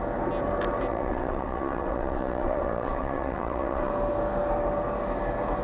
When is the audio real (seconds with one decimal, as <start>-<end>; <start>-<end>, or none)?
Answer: 0.0-0.9; 3.9-5.6